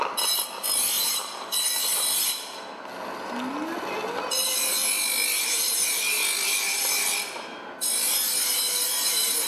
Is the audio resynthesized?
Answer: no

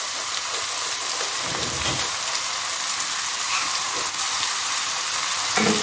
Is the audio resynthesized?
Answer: yes